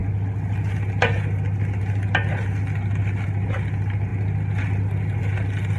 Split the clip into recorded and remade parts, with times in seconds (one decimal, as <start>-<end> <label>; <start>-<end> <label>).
0.0-5.8 recorded